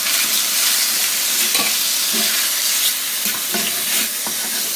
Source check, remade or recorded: recorded